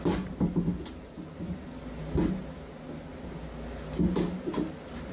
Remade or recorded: recorded